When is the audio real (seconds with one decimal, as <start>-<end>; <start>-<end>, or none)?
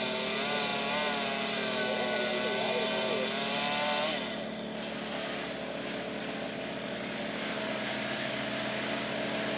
0.0-9.6